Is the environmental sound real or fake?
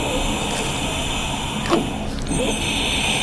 real